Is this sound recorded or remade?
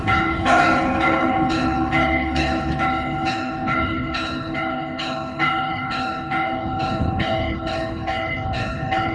remade